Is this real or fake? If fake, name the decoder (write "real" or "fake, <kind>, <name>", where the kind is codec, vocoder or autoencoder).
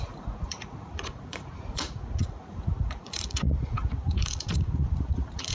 fake, vocoder, Vocos